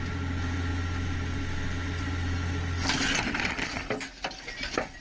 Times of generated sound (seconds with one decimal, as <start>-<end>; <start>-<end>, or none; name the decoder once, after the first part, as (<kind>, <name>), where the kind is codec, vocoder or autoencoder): none